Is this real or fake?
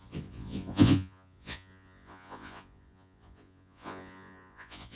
fake